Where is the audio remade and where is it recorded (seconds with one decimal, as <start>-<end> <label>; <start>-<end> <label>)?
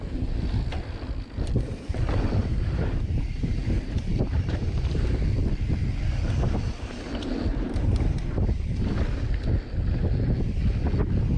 0.0-2.4 recorded; 2.4-5.1 remade; 5.1-7.5 recorded; 7.5-8.9 remade; 8.9-11.4 recorded